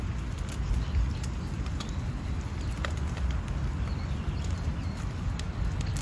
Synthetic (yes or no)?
no